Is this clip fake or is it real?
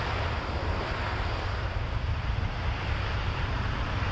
real